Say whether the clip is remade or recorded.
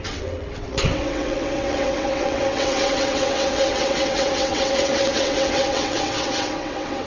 remade